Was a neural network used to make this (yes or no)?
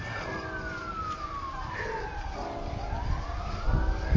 no